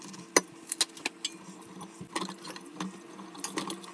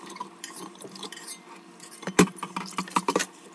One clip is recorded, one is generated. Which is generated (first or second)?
second